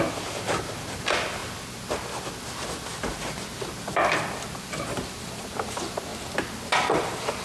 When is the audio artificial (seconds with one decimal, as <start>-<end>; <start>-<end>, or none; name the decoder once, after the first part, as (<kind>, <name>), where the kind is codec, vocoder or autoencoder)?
none